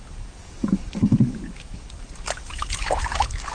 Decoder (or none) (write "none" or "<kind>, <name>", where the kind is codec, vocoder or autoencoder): codec, DAC